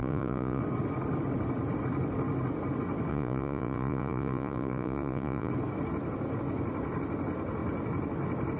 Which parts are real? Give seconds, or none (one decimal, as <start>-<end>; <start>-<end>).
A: 0.6-3.1; 5.5-8.6